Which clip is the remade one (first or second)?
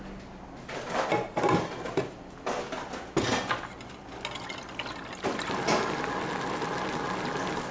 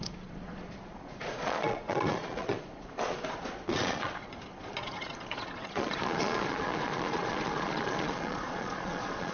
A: second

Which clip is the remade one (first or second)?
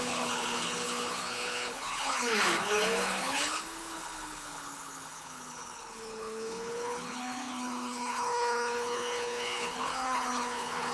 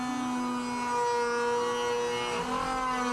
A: first